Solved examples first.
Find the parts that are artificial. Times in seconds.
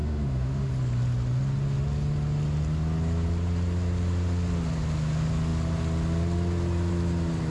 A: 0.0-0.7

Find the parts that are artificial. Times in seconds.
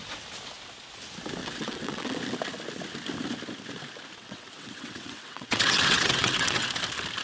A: 1.4-2.2; 4.2-6.7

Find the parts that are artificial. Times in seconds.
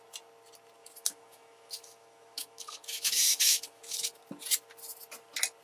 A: 0.8-4.2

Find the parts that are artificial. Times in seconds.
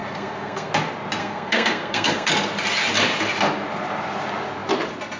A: 0.0-0.7; 1.2-2.3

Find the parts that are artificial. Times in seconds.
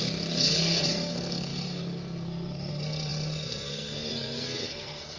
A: 0.0-5.2